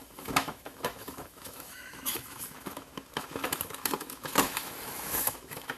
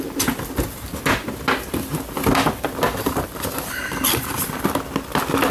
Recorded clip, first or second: second